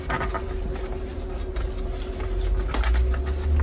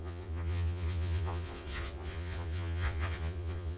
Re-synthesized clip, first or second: second